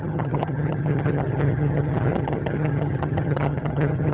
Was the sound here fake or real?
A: fake